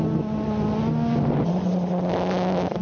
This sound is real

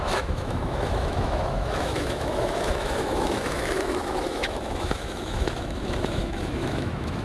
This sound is fake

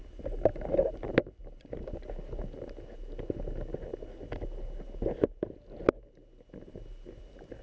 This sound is real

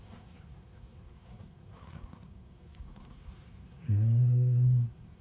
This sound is fake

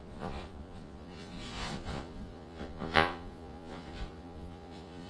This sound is fake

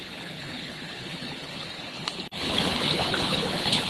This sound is fake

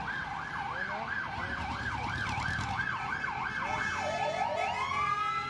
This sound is real